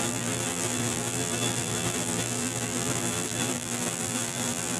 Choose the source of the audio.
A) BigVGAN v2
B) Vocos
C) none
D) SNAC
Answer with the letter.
A